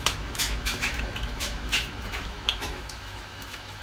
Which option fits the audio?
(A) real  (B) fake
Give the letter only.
B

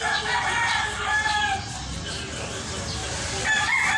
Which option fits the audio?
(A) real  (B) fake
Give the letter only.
A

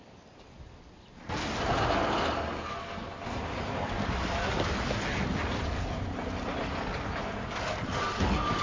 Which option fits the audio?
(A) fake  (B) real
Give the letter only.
B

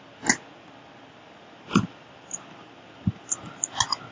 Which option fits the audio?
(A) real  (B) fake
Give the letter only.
A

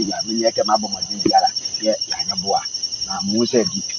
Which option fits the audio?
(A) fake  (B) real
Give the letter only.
A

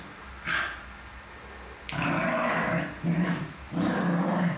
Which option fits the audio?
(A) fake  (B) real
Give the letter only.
B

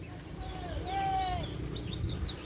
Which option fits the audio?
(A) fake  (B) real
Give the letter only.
B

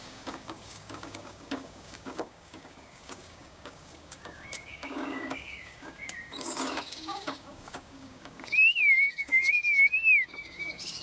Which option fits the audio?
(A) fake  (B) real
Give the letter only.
A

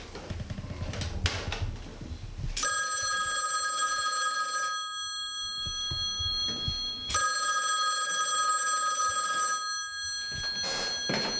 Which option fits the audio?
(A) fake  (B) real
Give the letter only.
B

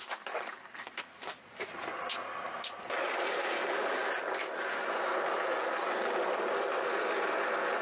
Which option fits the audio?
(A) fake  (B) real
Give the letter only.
B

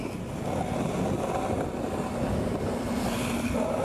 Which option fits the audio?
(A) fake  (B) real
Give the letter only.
B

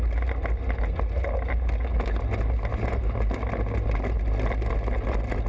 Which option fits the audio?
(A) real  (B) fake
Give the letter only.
A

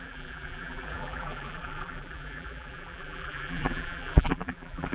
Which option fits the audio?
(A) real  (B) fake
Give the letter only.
B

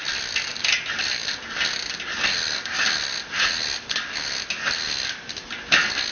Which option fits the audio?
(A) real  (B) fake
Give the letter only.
A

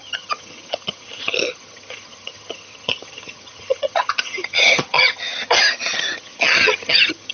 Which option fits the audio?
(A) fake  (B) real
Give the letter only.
A